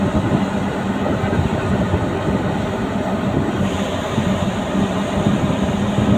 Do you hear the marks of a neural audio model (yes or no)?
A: no